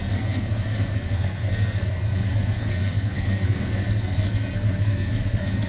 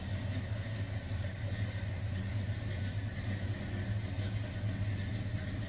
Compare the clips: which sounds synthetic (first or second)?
first